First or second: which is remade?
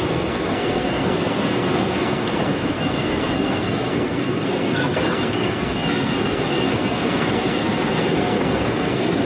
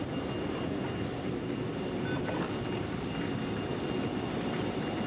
first